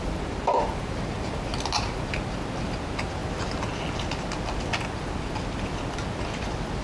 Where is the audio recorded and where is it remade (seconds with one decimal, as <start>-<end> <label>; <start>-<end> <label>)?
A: 0.0-6.8 recorded

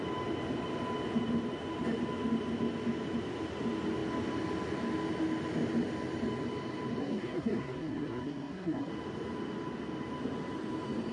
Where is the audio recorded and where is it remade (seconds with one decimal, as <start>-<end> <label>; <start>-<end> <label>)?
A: 0.0-7.0 recorded; 7.0-8.9 remade; 8.9-11.1 recorded

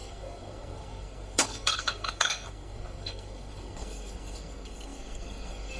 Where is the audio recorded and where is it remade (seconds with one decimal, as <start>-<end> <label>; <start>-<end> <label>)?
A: 0.0-5.8 remade

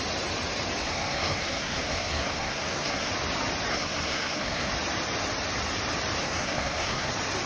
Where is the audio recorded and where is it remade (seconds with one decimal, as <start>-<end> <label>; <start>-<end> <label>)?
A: 0.0-0.8 recorded; 0.8-3.1 remade; 3.1-3.7 recorded; 3.7-4.7 remade; 4.7-6.2 recorded; 6.2-7.1 remade; 7.1-7.5 recorded

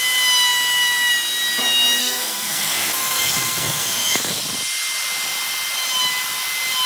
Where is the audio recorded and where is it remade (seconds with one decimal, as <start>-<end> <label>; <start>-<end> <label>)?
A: 0.0-2.0 recorded; 2.0-4.4 remade; 4.4-6.9 recorded

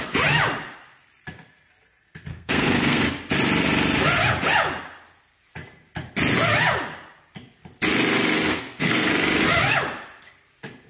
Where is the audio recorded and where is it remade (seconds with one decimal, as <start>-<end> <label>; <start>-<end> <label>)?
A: 0.0-2.3 recorded; 2.3-3.0 remade; 3.0-8.5 recorded; 8.5-9.1 remade; 9.1-10.9 recorded

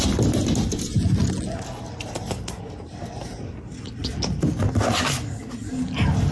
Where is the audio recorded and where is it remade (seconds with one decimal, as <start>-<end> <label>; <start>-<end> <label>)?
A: 0.0-6.3 recorded

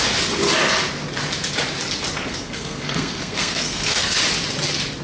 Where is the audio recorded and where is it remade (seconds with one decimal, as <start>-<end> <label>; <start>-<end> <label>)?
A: 0.0-2.3 recorded; 2.3-4.2 remade; 4.2-5.0 recorded